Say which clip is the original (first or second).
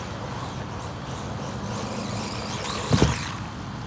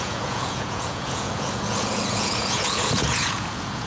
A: first